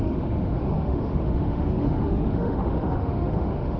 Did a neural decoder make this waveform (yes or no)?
yes